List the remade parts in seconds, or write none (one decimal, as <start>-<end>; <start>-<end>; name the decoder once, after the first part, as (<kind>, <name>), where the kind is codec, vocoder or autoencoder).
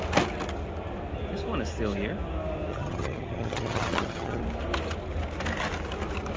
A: 2.7-4.4 (vocoder, HiFi-GAN)